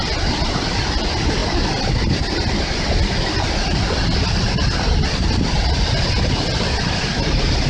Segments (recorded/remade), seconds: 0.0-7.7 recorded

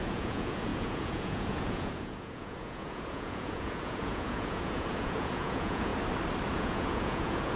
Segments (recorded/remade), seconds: 0.0-5.9 remade; 5.9-6.5 recorded; 6.5-7.6 remade

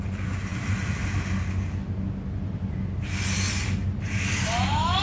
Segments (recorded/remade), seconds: 0.0-5.0 recorded